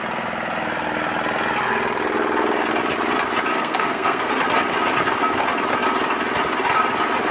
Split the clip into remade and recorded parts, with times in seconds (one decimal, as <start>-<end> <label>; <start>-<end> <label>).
0.0-3.5 recorded; 3.5-4.3 remade; 4.3-7.3 recorded